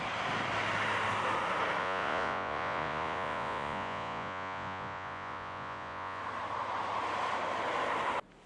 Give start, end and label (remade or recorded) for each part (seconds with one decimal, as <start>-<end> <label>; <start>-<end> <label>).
0.0-1.8 recorded; 1.8-6.2 remade; 6.2-8.5 recorded